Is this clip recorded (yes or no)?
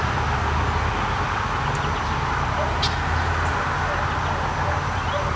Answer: yes